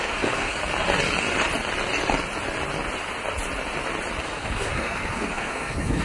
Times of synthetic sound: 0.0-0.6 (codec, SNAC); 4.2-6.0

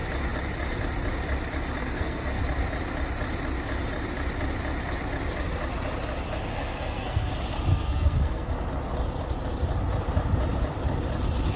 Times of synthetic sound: 1.8-2.4 (codec, SNAC); 6.5-7.3; 7.7-8.5

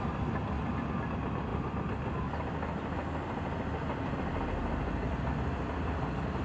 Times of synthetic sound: none

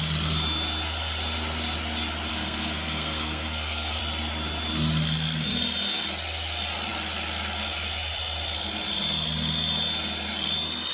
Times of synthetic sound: 2.3-4.0 (codec, SNAC)